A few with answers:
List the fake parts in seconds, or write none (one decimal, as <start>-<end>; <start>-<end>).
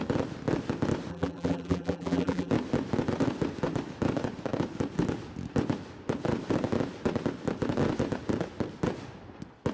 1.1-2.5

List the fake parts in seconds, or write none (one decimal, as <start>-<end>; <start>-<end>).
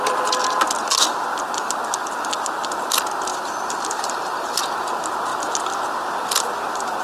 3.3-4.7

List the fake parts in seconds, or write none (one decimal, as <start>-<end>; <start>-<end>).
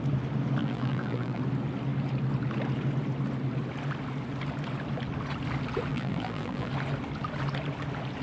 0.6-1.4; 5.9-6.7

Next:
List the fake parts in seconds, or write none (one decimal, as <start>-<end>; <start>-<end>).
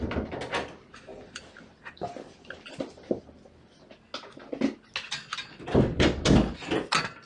1.1-3.2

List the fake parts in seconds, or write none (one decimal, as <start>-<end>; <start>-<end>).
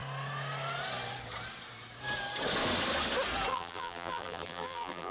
3.5-5.1